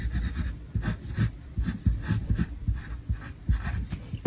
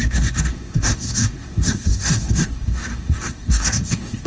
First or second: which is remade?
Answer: second